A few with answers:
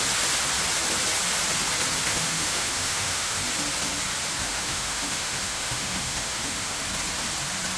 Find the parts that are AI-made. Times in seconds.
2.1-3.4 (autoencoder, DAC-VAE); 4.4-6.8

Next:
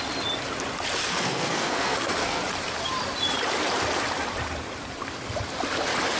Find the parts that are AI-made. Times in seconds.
1.0-2.4 (codec, SNAC)